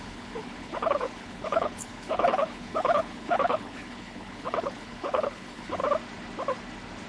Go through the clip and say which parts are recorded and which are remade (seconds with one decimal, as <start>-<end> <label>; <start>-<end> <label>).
0.0-5.8 remade; 5.8-7.1 recorded